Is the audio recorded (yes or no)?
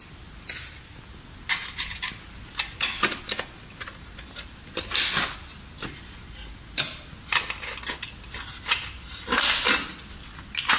yes